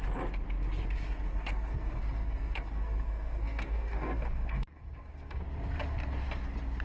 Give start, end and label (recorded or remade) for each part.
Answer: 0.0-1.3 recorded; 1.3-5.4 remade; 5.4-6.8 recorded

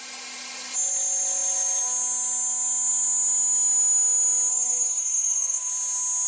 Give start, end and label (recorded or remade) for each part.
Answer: 0.0-4.5 recorded; 4.5-5.7 remade; 5.7-6.3 recorded

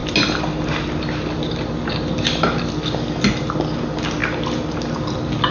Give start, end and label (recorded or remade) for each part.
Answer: 0.0-5.5 recorded

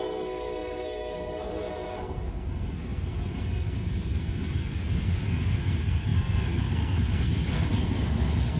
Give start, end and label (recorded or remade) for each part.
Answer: 0.0-8.6 remade